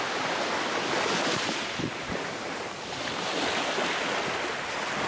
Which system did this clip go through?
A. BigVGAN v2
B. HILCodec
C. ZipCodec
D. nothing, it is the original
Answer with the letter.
D